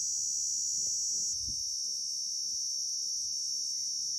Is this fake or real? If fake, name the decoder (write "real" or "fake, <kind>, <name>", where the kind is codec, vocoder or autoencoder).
real